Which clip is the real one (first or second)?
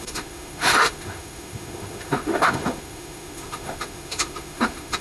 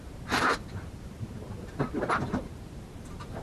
second